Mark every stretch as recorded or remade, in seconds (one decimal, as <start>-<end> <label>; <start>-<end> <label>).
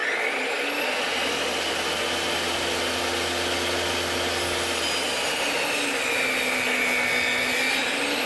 0.0-8.3 recorded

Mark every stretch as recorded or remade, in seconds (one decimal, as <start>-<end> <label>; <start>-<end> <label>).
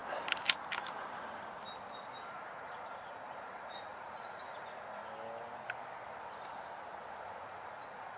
0.0-2.3 recorded; 2.3-5.0 remade; 5.0-7.2 recorded; 7.2-8.2 remade